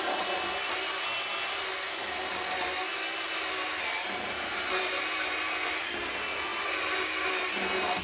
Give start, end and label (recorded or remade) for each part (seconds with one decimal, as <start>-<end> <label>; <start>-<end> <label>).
0.0-8.0 recorded